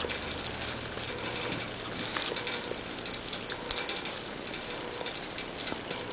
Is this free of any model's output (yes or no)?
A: yes